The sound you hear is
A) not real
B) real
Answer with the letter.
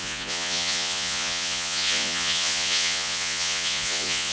A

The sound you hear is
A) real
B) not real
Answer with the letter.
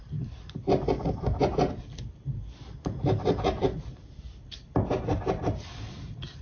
A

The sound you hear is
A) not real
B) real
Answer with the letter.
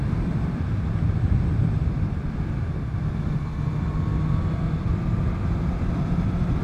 A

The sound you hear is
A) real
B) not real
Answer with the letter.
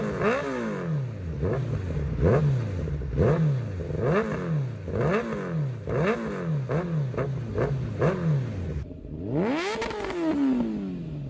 A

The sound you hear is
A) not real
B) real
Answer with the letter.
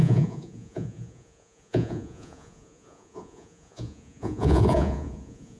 A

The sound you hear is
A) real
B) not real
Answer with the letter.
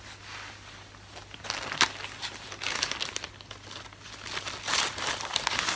A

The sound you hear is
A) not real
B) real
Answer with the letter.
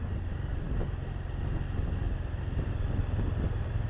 B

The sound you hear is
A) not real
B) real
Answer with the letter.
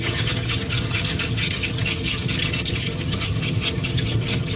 A